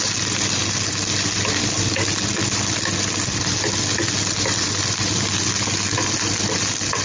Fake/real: real